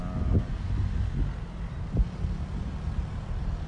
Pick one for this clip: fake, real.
real